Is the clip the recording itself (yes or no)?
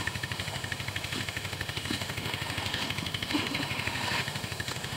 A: no